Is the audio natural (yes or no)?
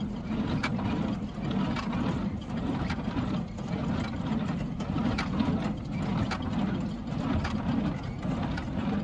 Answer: no